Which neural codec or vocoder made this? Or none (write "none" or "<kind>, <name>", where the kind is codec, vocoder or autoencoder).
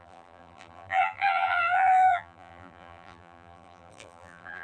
vocoder, BigVGAN v2